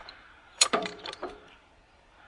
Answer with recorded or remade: remade